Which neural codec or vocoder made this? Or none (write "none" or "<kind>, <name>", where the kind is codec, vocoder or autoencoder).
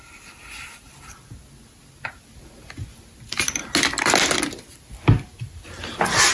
none